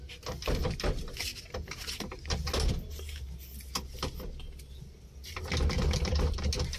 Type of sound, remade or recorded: recorded